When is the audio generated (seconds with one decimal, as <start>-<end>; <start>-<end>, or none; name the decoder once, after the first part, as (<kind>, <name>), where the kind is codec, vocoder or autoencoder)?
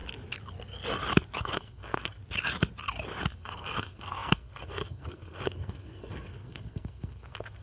1.4-2.2 (codec, SNAC); 3.4-7.6